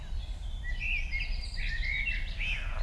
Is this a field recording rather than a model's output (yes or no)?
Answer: yes